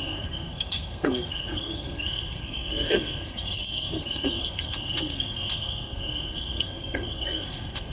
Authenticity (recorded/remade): remade